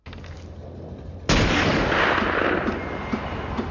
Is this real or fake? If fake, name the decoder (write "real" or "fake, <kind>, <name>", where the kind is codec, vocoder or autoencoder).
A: real